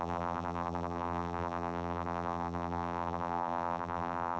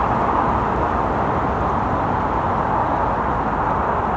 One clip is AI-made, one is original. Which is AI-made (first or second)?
first